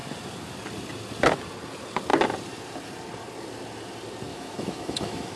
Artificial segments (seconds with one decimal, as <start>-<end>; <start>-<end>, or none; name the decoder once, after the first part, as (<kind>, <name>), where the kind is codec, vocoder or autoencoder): 4.3-5.4 (autoencoder, DAC-VAE)